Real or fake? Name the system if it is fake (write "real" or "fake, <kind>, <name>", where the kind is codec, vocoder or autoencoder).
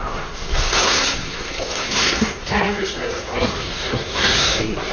fake, codec, SNAC